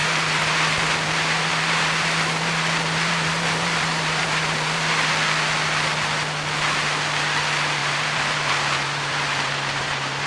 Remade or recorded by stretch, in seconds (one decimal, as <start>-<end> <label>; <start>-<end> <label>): 0.0-5.1 remade; 5.1-7.8 recorded; 7.8-10.3 remade